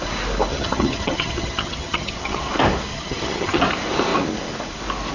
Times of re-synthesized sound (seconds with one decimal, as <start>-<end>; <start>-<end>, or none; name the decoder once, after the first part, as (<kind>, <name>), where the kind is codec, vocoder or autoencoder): 0.5-2.5 (vocoder, HiFi-GAN); 2.9-3.6